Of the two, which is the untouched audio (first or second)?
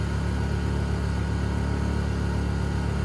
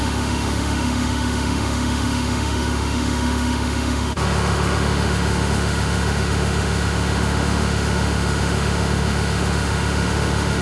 first